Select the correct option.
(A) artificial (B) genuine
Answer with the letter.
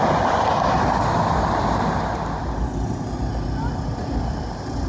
B